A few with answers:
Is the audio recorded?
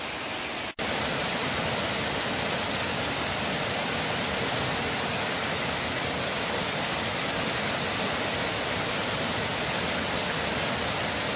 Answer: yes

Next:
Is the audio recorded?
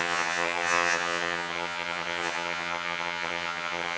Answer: no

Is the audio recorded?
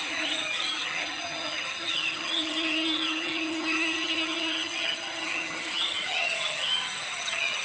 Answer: no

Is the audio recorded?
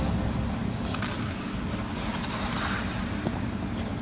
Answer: yes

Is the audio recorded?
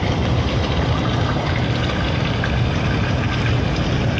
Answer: yes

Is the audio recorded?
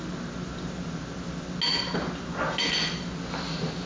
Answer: yes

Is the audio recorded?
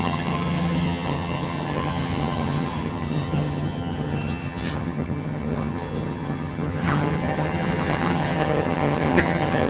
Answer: no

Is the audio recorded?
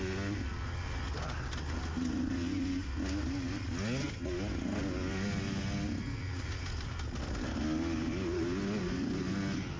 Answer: yes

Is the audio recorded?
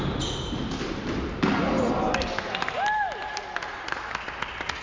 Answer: yes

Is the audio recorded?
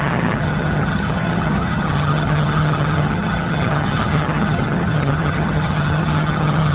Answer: no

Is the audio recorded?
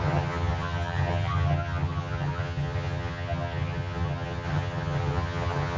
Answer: no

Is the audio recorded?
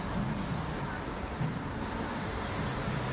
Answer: yes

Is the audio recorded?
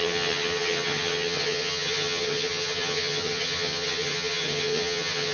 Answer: no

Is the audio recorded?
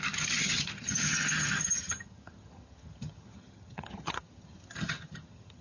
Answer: no